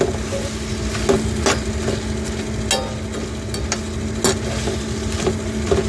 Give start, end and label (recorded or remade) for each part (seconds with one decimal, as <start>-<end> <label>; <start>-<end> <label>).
0.0-5.9 recorded